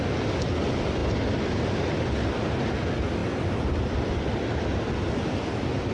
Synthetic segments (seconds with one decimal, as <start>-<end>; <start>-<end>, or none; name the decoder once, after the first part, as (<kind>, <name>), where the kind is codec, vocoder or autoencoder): none